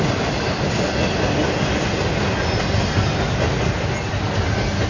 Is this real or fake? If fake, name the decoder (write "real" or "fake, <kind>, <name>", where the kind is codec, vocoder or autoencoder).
real